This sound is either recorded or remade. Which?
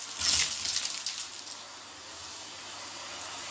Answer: recorded